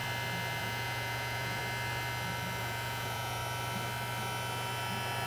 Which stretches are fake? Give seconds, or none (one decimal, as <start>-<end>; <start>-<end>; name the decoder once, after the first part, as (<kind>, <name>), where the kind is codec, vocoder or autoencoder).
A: 0.6-1.6 (vocoder, Vocos); 2.6-3.4